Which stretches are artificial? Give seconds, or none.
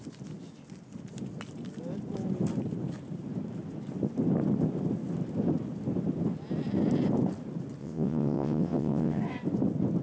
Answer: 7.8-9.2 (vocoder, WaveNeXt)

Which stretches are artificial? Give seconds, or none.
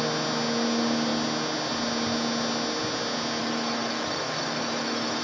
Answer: 3.4-5.2 (autoencoder, DAC-VAE)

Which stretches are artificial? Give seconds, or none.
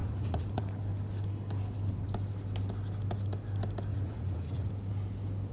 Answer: 0.0-0.6 (vocoder, Vocos); 3.9-4.7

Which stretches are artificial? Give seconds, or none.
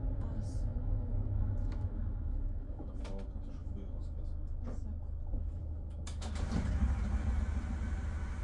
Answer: 0.7-2.9 (autoencoder, DAC-VAE); 3.6-4.2; 5.3-6.3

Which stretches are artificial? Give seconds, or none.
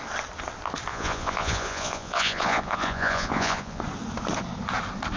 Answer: 0.9-3.8 (vocoder, Vocos)